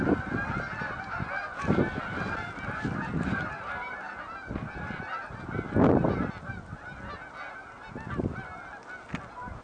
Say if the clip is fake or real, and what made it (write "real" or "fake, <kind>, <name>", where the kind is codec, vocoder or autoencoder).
real